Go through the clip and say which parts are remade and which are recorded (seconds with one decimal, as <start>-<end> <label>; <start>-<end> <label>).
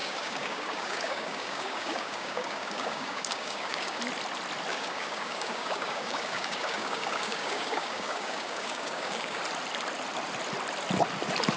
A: 0.0-4.0 remade; 4.0-4.7 recorded; 4.7-9.4 remade; 9.4-11.6 recorded